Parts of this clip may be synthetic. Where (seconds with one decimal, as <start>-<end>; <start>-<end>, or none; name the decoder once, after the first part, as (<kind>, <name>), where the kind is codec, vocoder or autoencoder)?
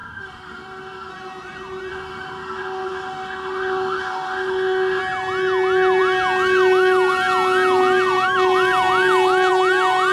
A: 0.0-1.1 (autoencoder, DAC-VAE); 1.9-5.0